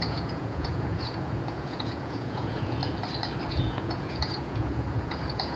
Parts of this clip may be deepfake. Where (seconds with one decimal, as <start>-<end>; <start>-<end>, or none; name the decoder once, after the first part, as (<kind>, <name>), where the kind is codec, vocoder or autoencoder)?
0.0-2.8 (vocoder, Vocos); 3.5-5.6